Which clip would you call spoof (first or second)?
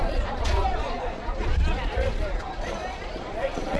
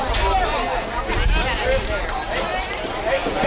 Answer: first